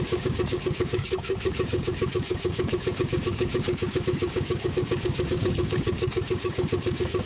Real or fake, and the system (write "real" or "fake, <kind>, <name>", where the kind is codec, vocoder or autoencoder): fake, codec, DAC